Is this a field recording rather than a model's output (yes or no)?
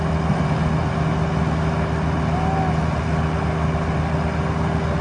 yes